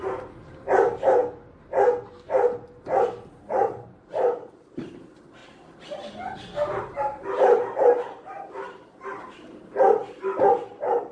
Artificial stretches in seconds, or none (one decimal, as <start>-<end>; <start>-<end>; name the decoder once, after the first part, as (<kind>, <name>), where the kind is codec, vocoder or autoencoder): 0.0-1.2 (vocoder, BigVGAN v2); 3.5-10.0; 10.5-11.1